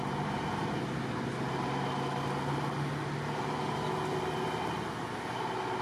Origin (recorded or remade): recorded